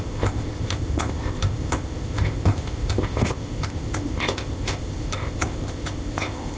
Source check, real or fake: fake